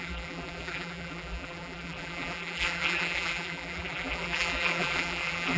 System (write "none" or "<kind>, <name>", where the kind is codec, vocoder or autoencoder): vocoder, BigVGAN v2